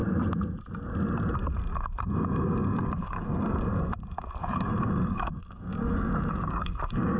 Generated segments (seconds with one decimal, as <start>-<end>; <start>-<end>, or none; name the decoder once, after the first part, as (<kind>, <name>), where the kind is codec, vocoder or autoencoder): 2.7-3.6 (codec, DAC); 4.4-7.2